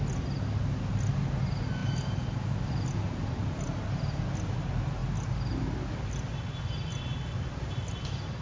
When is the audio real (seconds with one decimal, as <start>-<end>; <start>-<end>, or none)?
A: 0.0-8.4